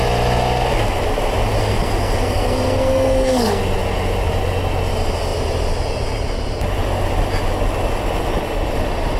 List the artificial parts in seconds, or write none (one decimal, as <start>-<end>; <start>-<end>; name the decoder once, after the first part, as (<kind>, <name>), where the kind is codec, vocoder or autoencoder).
1.6-3.6 (codec, SNAC)